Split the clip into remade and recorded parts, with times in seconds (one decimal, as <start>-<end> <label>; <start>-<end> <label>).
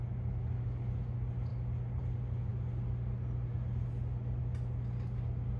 0.0-5.6 recorded